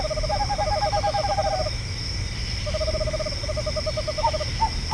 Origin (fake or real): real